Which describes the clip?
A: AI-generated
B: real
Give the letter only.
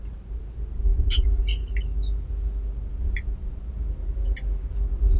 B